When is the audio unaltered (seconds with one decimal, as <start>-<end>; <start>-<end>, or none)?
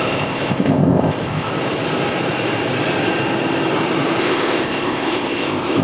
1.5-4.2